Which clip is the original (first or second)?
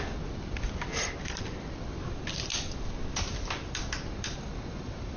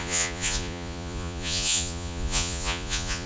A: first